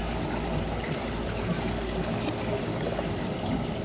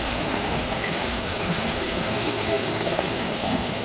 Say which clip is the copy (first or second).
second